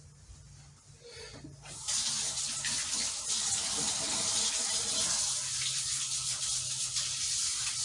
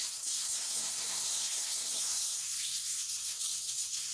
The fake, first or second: second